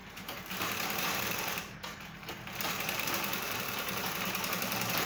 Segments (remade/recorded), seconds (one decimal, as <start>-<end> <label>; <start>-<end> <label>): 0.0-5.1 remade